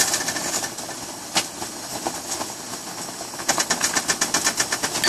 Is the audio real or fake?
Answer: real